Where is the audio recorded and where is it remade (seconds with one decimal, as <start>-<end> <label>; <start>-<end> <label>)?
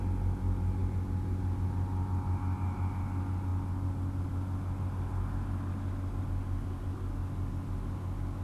0.0-8.4 recorded